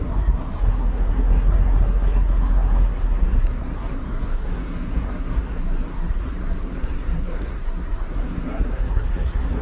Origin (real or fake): fake